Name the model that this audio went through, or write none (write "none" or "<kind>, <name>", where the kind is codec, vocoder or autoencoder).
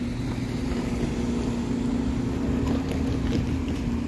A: none